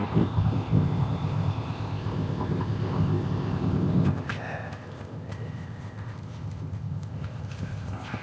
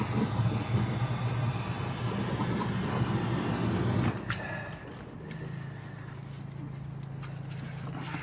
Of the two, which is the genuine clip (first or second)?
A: second